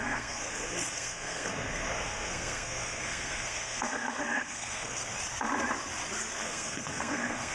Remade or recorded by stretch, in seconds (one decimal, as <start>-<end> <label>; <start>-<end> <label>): 0.0-5.0 remade; 5.0-6.3 recorded; 6.3-7.5 remade